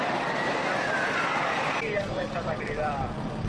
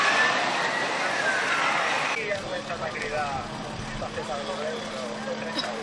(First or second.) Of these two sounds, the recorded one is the second